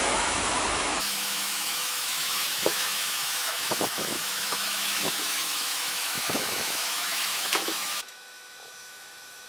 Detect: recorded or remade remade